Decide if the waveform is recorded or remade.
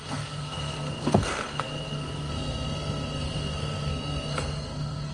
remade